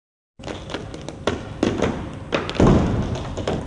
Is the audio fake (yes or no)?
no